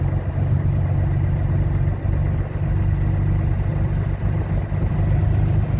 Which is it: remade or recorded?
recorded